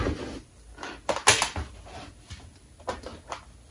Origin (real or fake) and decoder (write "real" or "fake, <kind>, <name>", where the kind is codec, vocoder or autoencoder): real